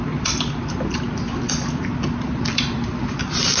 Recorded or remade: recorded